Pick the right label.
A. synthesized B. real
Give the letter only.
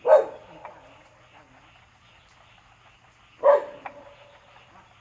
B